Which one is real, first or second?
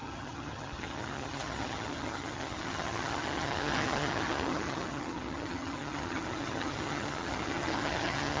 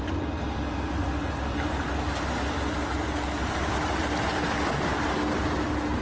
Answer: second